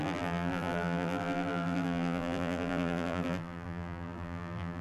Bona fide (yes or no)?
no